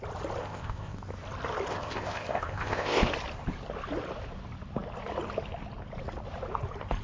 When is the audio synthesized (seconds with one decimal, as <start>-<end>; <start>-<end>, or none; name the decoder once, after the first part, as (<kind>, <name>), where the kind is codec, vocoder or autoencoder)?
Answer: 0.4-1.0 (codec, ZipCodec); 1.7-3.1